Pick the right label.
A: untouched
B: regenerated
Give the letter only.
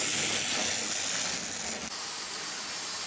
A